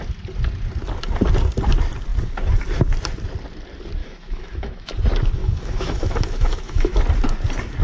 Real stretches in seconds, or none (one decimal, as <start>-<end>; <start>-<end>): 0.0-4.0; 4.9-5.4; 7.0-7.8